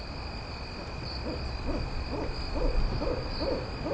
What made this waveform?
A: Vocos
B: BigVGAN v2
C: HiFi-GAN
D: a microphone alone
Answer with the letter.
D